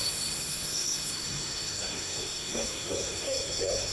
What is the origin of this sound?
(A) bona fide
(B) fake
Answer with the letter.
B